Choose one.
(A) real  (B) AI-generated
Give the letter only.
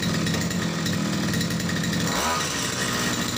A